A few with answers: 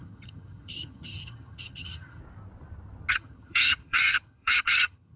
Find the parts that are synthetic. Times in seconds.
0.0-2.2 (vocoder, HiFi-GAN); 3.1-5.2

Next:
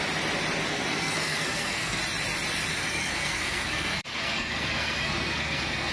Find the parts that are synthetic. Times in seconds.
0.7-2.0 (codec, SNAC); 2.7-5.9

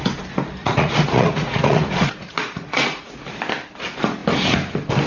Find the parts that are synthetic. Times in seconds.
0.6-3.4 (vocoder, Vocos)

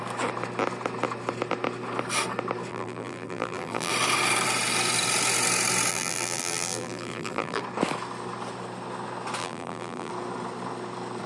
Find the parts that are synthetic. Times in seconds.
2.7-3.9 (vocoder, BigVGAN v2); 5.9-7.6; 9.4-10.1

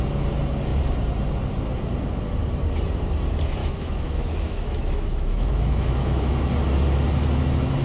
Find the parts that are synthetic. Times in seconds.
3.6-6.5 (autoencoder, DAC-VAE)